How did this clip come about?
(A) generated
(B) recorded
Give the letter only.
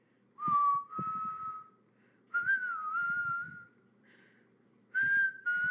B